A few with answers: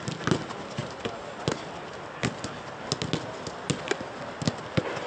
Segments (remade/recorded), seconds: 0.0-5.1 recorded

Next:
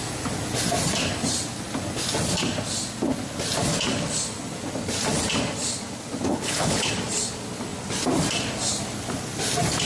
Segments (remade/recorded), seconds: 0.0-6.3 recorded; 6.3-6.9 remade; 6.9-9.9 recorded

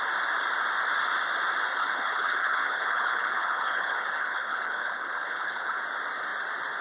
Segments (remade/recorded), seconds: 0.0-1.7 recorded; 1.7-5.8 remade; 5.8-6.8 recorded

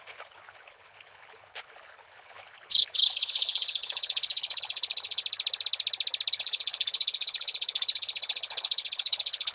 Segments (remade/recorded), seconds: 0.0-5.2 remade; 5.2-6.3 recorded; 6.3-9.5 remade

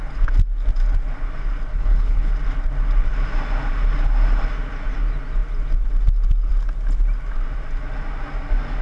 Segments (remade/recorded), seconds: 0.0-1.7 recorded; 1.7-2.3 remade; 2.3-8.8 recorded

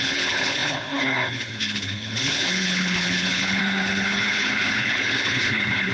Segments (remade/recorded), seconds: 0.0-5.9 remade

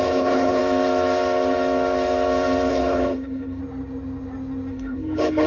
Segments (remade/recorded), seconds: 0.0-0.6 remade; 0.6-2.7 recorded; 2.7-3.6 remade; 3.6-4.7 recorded; 4.7-5.5 remade

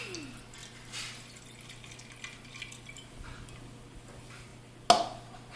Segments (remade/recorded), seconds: 0.0-5.6 recorded